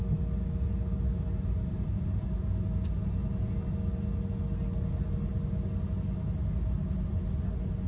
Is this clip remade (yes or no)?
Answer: no